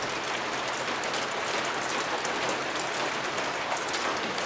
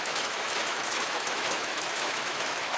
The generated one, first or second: second